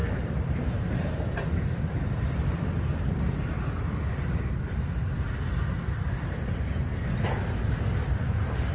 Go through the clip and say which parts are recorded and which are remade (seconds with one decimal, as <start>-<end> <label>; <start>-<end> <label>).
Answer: 0.0-8.7 recorded